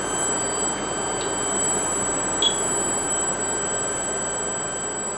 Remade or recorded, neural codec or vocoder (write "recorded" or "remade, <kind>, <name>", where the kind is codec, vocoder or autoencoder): recorded